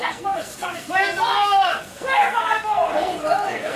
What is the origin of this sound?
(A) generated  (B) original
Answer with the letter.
A